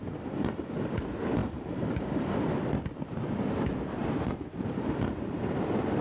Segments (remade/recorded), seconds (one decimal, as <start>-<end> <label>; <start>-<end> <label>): 0.0-1.4 recorded; 1.4-2.5 remade; 2.5-4.0 recorded; 4.0-4.9 remade; 4.9-6.0 recorded